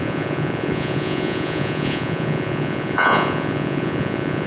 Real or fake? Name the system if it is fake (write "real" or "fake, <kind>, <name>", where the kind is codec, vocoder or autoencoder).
fake, vocoder, Vocos